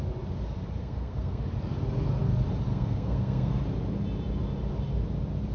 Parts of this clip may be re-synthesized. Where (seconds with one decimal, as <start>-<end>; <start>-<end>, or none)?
0.8-1.4; 2.7-3.6